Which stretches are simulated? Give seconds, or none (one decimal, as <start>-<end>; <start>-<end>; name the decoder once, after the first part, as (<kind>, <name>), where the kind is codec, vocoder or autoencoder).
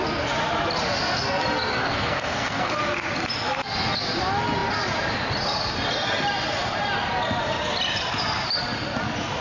1.8-2.8 (codec, SNAC)